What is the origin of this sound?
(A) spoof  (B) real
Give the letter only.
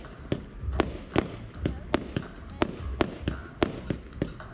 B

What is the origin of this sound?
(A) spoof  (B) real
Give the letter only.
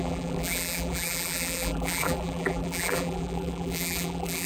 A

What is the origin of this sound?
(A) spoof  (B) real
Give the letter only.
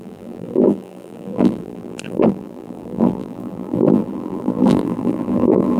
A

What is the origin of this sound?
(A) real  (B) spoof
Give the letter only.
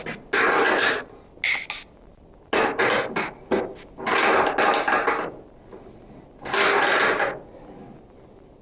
A